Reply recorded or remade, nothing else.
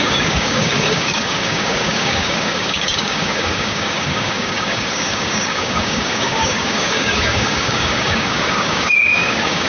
remade